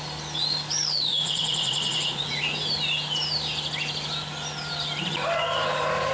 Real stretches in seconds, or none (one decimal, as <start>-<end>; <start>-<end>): 0.0-1.1; 2.4-6.1